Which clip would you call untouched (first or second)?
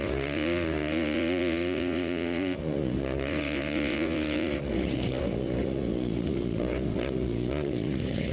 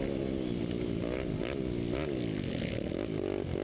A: second